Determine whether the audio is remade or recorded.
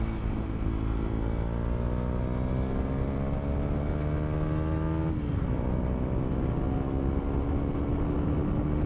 recorded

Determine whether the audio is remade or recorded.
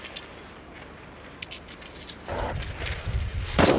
recorded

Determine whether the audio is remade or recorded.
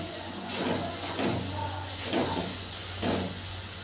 remade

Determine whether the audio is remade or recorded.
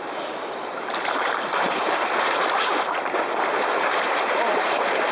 remade